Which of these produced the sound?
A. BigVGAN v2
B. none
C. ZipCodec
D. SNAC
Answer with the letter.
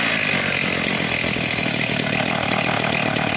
B